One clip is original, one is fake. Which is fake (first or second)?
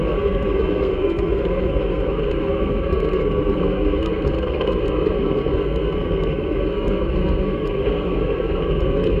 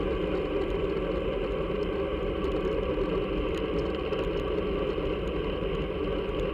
first